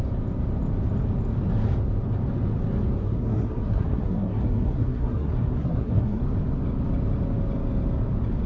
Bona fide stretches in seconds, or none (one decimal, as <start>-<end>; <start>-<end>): 0.0-3.0; 6.2-8.5